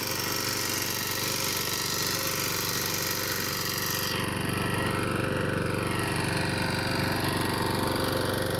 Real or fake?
real